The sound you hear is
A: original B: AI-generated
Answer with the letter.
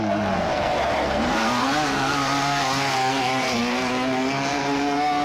B